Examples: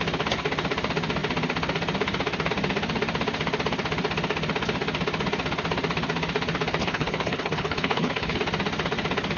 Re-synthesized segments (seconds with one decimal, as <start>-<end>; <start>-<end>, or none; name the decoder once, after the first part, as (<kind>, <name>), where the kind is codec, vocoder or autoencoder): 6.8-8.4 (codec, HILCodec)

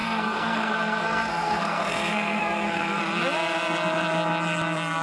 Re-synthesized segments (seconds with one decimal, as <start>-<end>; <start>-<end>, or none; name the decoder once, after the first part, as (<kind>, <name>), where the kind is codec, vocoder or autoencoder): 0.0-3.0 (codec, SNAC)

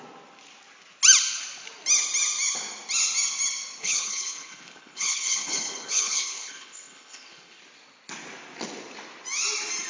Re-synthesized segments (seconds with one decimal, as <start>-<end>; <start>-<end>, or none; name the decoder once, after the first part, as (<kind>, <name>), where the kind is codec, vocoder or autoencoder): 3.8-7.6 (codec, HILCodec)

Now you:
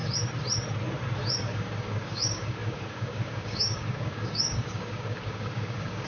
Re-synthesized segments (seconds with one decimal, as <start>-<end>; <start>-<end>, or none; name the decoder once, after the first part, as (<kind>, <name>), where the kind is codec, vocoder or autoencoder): 1.4-6.1 (codec, DAC)

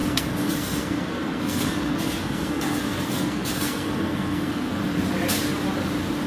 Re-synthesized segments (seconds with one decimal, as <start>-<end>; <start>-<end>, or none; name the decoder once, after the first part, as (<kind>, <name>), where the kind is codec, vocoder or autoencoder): 0.0-4.8 (codec, SNAC)

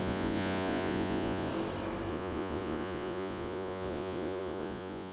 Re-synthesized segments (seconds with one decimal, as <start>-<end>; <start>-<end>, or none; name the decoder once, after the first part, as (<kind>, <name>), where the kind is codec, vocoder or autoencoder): 0.0-1.5 (vocoder, Vocos); 2.1-5.1

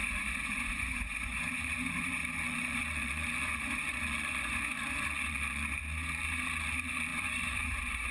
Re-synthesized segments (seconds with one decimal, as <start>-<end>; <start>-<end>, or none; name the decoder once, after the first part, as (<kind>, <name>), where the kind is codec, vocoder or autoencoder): 0.0-5.8 (vocoder, Vocos); 6.6-8.1